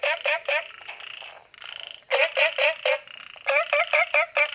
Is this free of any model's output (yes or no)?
yes